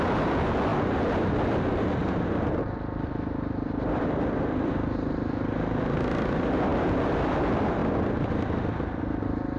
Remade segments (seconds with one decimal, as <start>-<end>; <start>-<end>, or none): none